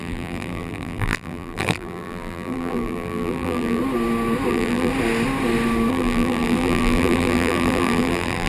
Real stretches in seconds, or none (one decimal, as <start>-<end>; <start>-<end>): 3.8-4.5; 4.9-5.9